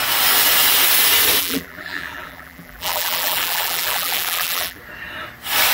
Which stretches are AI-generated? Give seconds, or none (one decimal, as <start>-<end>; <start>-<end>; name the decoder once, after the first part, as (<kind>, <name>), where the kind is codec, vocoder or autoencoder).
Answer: 1.4-4.8 (vocoder, BigVGAN v2)